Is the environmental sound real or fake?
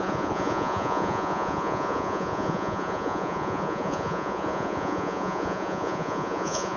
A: fake